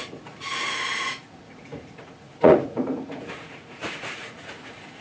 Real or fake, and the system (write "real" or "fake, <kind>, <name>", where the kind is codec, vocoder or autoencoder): fake, vocoder, Vocos